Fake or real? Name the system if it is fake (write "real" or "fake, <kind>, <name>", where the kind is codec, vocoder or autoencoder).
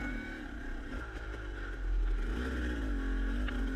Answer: real